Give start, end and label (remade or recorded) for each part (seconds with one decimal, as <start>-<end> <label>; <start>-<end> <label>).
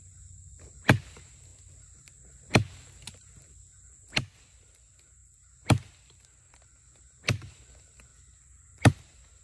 0.0-8.1 recorded; 8.1-8.9 remade; 8.9-9.4 recorded